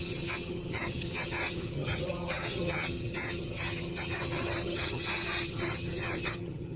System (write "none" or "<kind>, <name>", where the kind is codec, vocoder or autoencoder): vocoder, HiFi-GAN